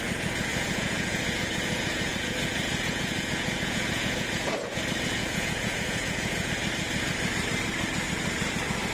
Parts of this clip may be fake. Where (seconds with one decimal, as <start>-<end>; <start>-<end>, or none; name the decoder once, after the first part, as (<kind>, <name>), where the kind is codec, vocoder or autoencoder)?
0.5-4.5 (vocoder, Vocos); 5.2-6.5